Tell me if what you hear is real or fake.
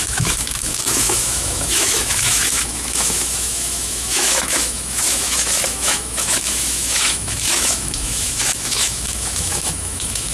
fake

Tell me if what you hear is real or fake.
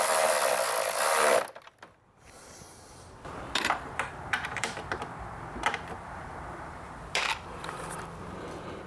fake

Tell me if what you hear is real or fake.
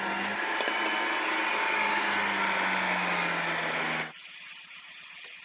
real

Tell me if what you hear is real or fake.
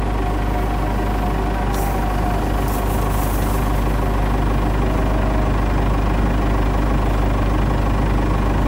real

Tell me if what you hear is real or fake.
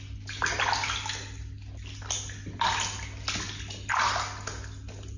real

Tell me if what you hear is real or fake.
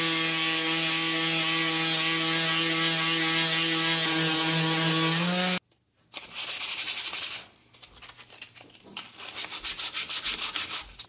real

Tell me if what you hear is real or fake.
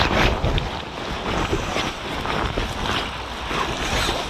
real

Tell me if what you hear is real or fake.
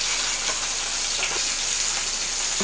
real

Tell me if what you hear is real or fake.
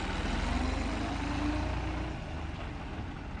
real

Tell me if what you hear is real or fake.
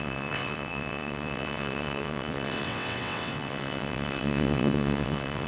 fake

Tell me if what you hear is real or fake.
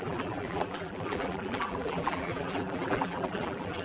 fake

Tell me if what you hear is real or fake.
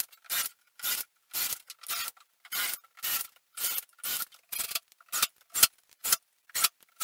real